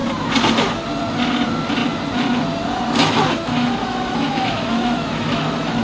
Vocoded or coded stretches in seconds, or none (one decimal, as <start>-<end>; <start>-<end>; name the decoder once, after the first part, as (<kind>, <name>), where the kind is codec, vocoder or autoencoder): 3.0-5.8 (autoencoder, DAC-VAE)